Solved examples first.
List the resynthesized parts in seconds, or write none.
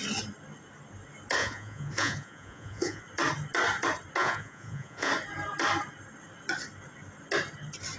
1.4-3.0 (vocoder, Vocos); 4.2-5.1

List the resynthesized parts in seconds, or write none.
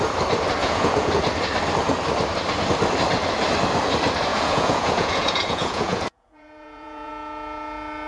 0.6-1.1 (vocoder, Vocos); 4.3-7.1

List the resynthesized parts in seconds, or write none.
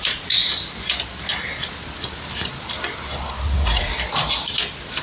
0.0-0.4 (vocoder, Vocos); 3.4-3.9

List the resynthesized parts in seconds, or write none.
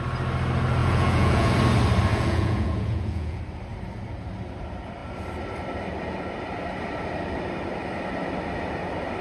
0.8-1.5 (vocoder, Vocos); 2.1-3.4